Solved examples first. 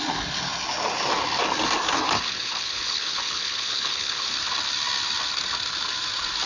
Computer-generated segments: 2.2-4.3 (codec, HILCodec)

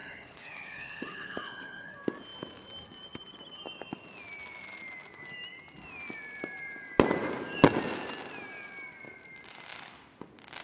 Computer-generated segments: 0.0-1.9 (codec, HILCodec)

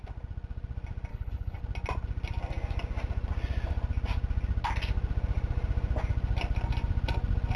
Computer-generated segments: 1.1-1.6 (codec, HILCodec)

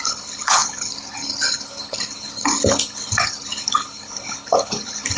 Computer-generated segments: 0.0-5.2 (codec, HILCodec)

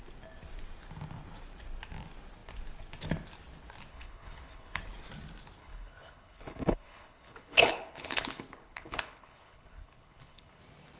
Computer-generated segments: 3.9-4.8 (codec, HILCodec); 5.6-10.6

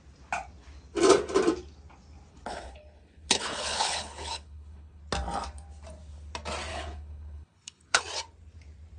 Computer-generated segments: 2.3-5.0 (codec, HILCodec); 6.7-8.0

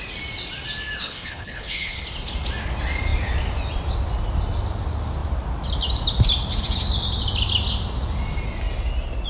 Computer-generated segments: 1.0-2.0 (codec, HILCodec)

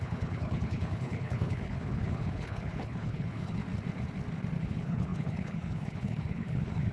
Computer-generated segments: 0.0-3.6 (codec, HILCodec); 4.6-6.9